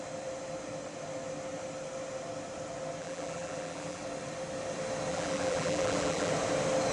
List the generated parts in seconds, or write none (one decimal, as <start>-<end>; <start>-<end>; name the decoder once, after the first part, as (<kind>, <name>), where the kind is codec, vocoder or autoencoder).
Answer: 3.0-4.0 (vocoder, BigVGAN v2); 5.1-6.3